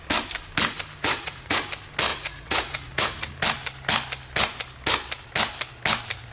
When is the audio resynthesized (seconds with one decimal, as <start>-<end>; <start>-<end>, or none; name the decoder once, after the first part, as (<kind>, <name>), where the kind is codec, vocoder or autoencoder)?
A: 1.0-1.6 (vocoder, Vocos); 2.1-3.3